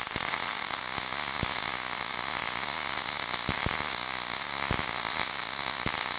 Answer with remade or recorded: recorded